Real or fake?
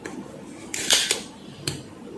fake